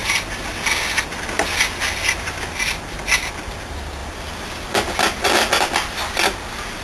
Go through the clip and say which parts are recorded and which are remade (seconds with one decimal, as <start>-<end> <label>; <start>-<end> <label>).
0.0-4.0 recorded; 4.0-4.7 remade; 4.7-6.8 recorded